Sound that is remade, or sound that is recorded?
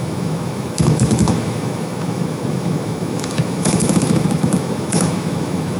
remade